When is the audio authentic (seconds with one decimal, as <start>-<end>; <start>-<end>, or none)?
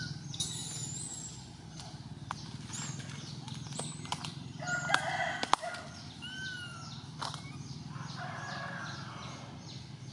0.0-10.1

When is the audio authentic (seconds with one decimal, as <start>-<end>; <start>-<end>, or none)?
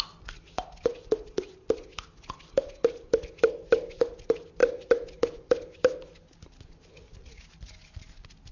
0.0-8.5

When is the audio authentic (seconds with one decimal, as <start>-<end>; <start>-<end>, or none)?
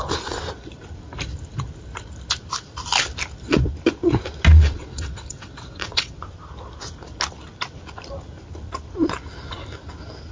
0.0-4.5; 6.2-10.3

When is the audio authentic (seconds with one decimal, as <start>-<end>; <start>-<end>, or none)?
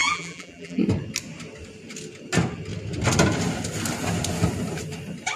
0.8-5.4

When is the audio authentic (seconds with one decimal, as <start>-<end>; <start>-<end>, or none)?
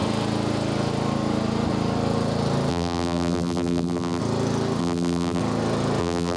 0.0-2.7; 4.2-4.8; 5.4-6.0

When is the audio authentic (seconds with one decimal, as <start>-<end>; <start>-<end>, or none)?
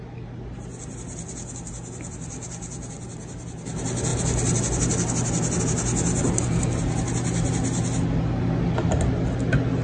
0.0-9.8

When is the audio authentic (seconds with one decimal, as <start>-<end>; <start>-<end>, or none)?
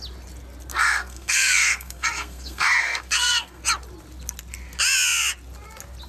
0.0-0.7; 3.6-6.1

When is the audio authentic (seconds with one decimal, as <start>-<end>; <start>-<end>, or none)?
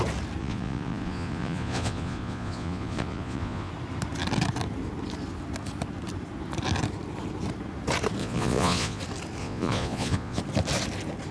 0.0-0.4; 3.7-8.2; 9.0-9.4; 10.4-11.3